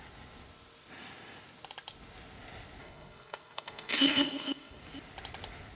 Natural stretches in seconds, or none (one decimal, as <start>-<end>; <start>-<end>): 0.0-2.8; 4.8-5.8